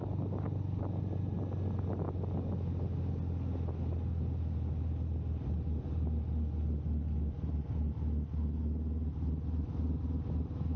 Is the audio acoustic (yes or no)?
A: yes